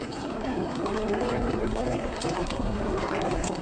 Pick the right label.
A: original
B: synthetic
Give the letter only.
B